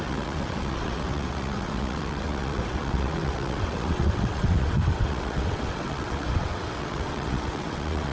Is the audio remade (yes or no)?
yes